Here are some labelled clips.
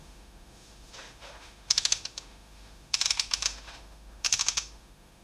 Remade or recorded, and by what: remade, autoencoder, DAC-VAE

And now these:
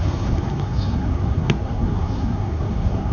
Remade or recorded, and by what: remade, codec, SNAC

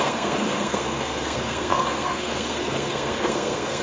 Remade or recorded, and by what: remade, codec, SNAC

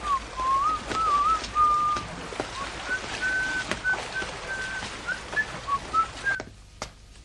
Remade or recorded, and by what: recorded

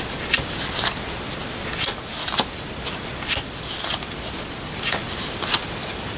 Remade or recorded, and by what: recorded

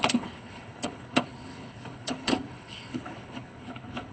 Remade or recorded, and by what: remade, codec, HILCodec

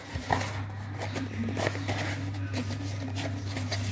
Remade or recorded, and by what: recorded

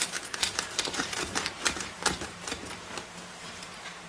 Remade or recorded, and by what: remade, vocoder, BigVGAN v2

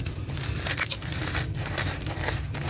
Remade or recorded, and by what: recorded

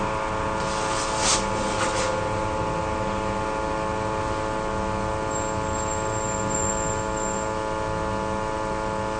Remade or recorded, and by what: recorded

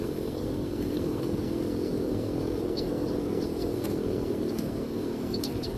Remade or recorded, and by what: remade, codec, SNAC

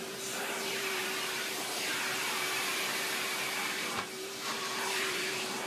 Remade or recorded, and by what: remade, vocoder, BigVGAN v2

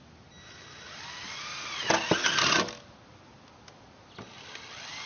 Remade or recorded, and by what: recorded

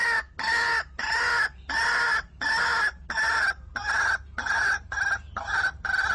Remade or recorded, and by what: recorded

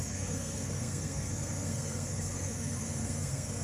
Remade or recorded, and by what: remade, codec, SNAC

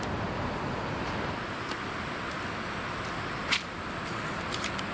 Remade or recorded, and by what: recorded